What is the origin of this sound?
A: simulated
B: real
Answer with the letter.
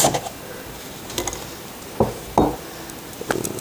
B